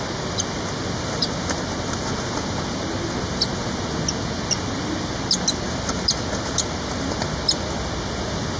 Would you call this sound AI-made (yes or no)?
no